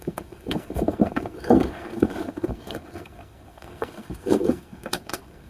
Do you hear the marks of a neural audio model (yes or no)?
yes